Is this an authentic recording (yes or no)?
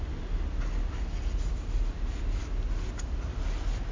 yes